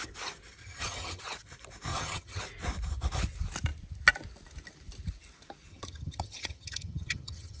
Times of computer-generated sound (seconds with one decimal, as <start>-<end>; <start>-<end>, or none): 0.6-1.2; 1.9-2.4; 5.7-7.6